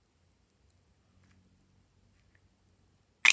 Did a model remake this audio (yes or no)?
no